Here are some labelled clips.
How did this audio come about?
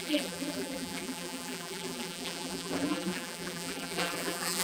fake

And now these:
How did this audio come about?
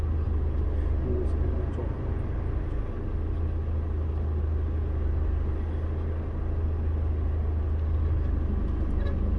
real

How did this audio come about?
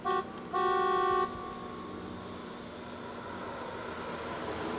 real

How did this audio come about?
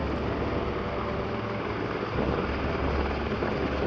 real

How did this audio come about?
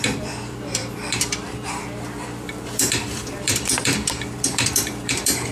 fake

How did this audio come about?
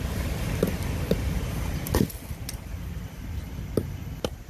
real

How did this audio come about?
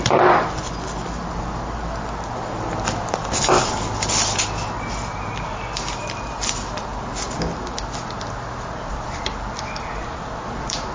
fake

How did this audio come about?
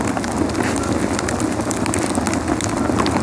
real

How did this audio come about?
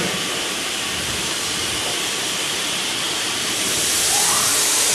fake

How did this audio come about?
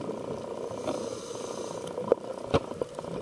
fake